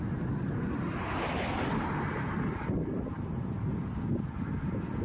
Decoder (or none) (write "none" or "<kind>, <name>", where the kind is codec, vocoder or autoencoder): none